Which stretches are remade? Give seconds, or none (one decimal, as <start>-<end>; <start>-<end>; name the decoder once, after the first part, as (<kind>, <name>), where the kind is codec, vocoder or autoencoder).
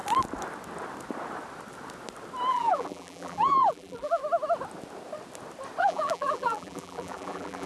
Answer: 2.5-4.2 (vocoder, BigVGAN v2); 5.8-7.7